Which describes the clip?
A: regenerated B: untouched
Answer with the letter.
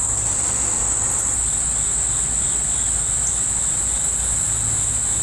B